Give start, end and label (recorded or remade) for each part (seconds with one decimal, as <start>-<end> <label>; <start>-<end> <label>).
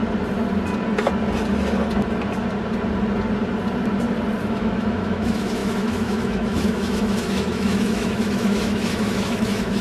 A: 0.0-4.4 recorded; 4.4-9.8 remade